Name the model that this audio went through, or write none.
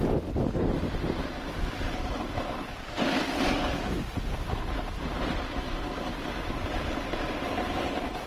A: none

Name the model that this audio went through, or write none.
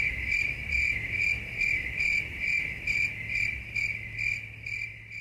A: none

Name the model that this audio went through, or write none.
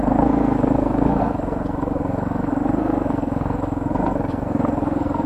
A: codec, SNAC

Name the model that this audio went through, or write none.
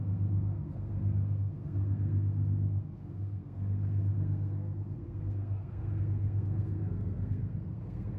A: codec, SNAC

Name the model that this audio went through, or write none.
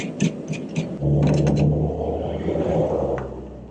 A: none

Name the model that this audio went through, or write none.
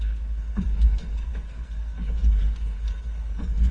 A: codec, SNAC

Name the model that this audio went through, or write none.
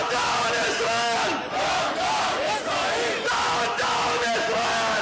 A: none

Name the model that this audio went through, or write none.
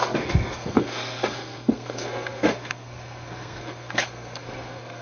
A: codec, SNAC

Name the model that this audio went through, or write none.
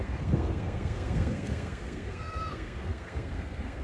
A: codec, SNAC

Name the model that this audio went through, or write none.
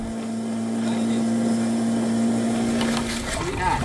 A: none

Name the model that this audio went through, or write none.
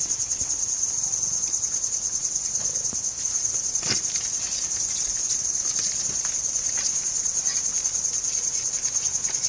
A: none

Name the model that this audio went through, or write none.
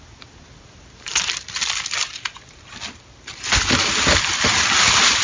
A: none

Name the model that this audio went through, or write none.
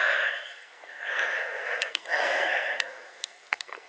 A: codec, SNAC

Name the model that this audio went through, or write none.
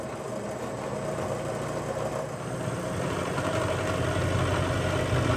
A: none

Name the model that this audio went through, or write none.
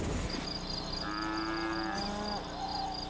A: none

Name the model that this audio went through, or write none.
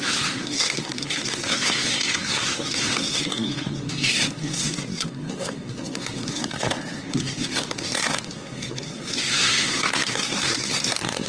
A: codec, SNAC